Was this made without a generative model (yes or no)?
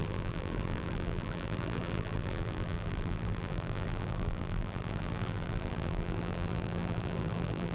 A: no